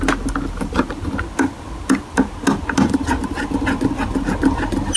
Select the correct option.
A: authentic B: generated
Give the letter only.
A